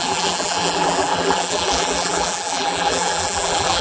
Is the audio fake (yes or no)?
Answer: yes